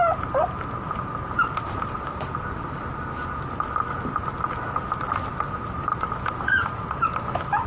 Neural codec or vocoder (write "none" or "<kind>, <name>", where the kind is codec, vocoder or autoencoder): none